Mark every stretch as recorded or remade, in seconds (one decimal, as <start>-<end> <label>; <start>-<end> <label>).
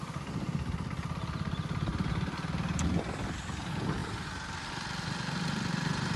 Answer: 0.0-6.2 recorded